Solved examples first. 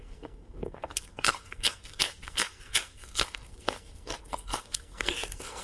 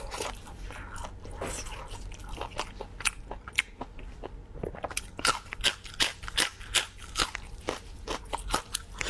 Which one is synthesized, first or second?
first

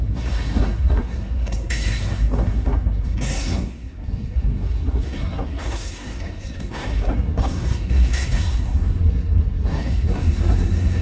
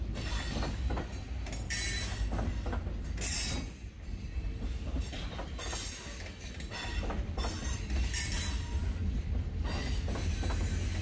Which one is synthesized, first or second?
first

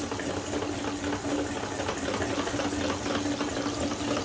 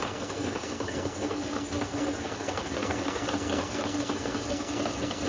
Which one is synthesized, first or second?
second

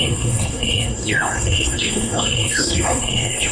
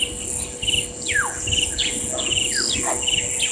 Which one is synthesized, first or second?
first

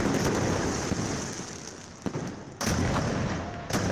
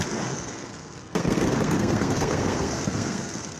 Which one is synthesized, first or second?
second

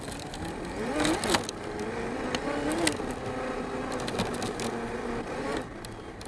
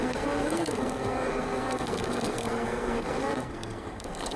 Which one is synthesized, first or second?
second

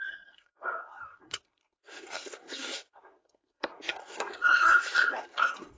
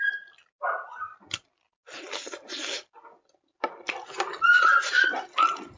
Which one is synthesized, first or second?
first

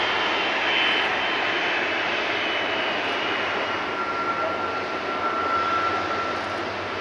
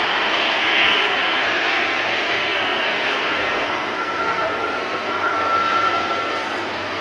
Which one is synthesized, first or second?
second